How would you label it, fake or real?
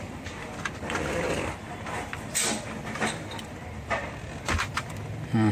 fake